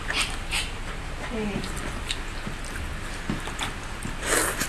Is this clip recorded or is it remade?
recorded